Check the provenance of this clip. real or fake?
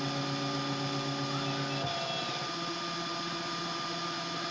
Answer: real